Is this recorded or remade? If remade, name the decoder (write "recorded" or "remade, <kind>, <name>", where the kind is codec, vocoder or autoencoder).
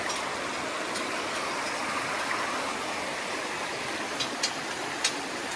recorded